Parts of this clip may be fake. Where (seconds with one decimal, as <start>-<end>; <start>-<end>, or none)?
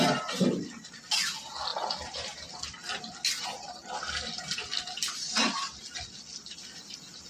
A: none